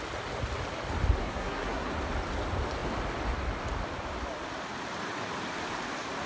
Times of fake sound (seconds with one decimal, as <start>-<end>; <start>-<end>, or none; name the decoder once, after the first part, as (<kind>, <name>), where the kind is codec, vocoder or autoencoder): 1.2-1.9 (codec, SNAC)